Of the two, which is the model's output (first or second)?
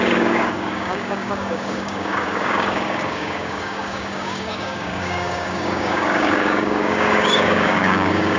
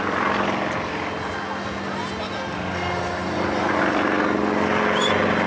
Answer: first